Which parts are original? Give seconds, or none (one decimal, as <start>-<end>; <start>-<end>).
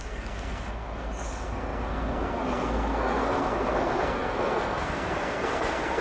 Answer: none